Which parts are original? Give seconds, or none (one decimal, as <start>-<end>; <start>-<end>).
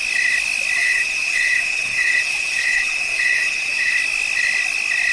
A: 0.0-0.8; 3.9-5.1